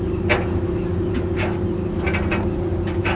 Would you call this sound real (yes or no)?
yes